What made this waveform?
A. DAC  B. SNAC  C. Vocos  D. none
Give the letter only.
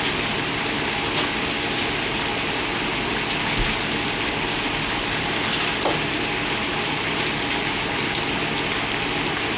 D